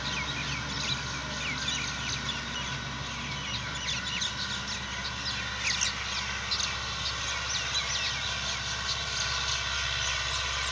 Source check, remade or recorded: recorded